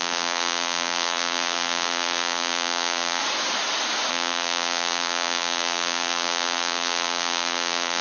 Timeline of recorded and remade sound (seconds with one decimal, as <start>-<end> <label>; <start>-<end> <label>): 0.0-3.2 remade; 3.2-4.1 recorded; 4.1-8.0 remade